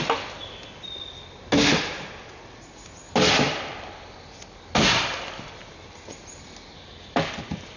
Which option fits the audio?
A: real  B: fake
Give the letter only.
A